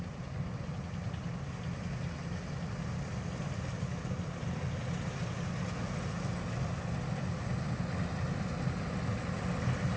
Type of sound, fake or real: real